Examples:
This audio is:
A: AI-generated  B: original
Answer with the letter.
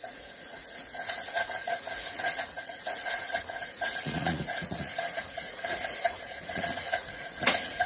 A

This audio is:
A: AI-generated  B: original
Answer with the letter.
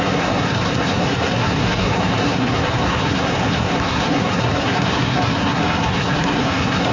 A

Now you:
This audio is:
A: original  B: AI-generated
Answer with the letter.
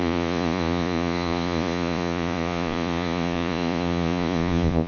B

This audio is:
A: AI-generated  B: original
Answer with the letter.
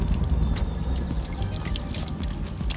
B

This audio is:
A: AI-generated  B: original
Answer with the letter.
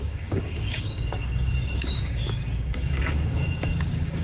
A